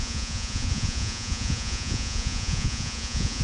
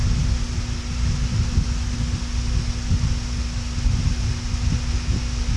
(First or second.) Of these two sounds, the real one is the second